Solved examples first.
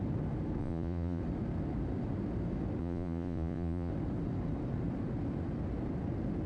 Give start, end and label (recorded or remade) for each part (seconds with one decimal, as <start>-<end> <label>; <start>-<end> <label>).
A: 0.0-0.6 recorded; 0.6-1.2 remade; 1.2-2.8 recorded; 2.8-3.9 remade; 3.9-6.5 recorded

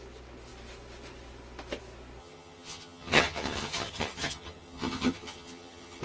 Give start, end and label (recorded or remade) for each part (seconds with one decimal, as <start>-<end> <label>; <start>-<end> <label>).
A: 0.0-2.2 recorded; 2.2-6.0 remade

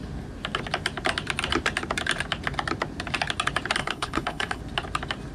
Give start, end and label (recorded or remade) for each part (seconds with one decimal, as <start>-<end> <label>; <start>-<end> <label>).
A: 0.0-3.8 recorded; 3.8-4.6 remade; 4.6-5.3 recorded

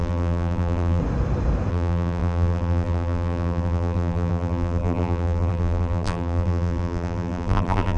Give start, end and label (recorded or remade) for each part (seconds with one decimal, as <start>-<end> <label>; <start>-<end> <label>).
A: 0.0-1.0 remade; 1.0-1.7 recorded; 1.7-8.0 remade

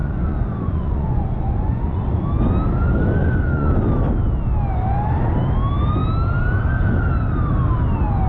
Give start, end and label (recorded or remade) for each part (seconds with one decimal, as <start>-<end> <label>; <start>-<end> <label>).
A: 0.0-2.1 remade; 2.1-3.2 recorded; 3.2-3.7 remade; 3.7-8.3 recorded